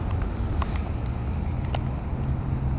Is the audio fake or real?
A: real